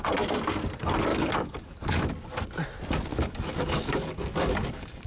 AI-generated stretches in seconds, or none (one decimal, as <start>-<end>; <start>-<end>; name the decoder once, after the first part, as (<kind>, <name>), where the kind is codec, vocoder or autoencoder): 1.1-2.0 (codec, DAC); 3.1-5.1